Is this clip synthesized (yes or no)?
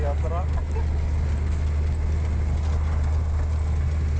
no